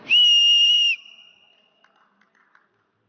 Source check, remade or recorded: recorded